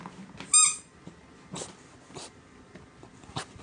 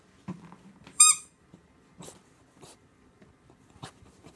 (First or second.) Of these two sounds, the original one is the first